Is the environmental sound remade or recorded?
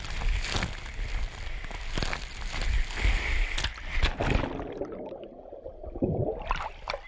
recorded